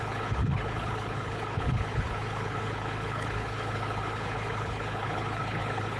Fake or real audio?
fake